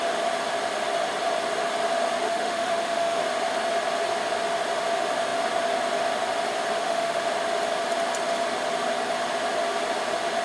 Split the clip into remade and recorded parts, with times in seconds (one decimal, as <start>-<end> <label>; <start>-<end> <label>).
0.0-2.2 recorded; 2.2-3.2 remade; 3.2-6.8 recorded; 6.8-7.3 remade; 7.3-10.4 recorded